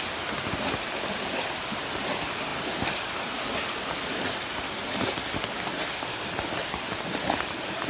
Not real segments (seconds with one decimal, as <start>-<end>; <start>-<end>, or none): none